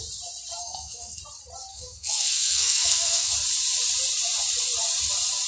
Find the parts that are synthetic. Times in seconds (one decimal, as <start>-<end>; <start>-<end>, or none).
0.6-1.2; 1.7-3.3